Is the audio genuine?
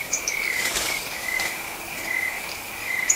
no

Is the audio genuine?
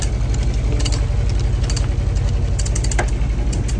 yes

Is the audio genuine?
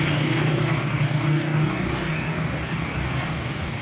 no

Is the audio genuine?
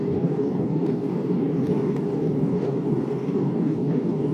no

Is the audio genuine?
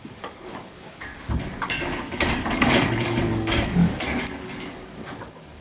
no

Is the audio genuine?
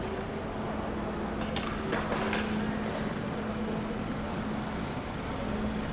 yes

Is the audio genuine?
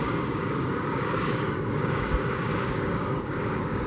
no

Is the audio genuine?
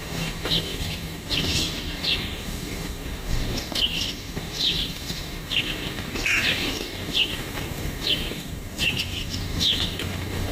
no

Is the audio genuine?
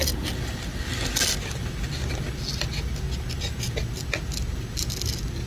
yes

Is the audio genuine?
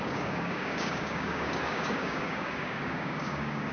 no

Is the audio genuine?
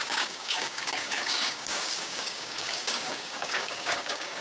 no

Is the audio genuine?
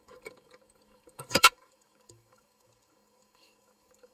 no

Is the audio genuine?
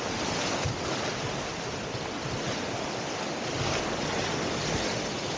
yes